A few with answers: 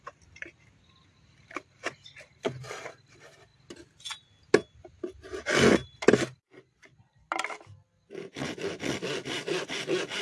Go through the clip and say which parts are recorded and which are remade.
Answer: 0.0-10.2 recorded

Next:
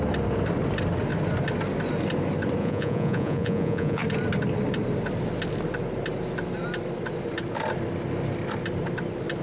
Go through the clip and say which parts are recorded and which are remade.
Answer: 0.0-2.6 recorded; 2.6-4.0 remade; 4.0-9.4 recorded

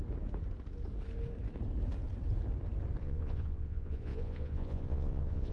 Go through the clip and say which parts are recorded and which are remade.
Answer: 0.0-3.0 recorded; 3.0-5.5 remade

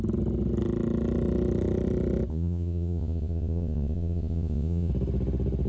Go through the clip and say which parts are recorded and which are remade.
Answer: 0.0-2.3 recorded; 2.3-4.9 remade; 4.9-5.7 recorded

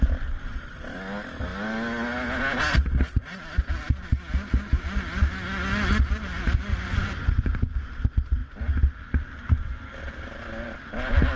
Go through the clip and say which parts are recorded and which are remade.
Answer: 0.0-6.7 recorded; 6.7-7.9 remade; 7.9-11.4 recorded